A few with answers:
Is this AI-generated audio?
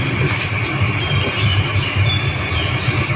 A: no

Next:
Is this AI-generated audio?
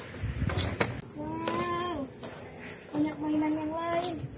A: no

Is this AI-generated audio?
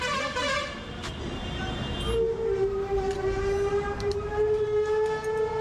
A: no